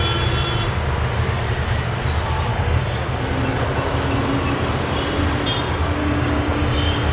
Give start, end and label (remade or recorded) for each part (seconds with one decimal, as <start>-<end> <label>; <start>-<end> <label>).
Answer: 0.0-2.5 recorded; 2.5-3.2 remade; 3.2-6.0 recorded; 6.0-7.1 remade